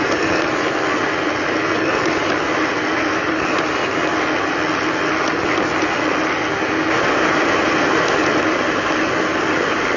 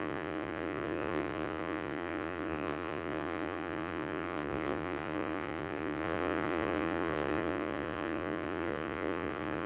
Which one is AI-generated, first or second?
second